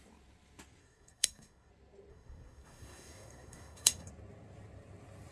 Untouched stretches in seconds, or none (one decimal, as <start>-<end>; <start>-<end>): 0.0-0.8; 1.7-2.1; 4.1-5.3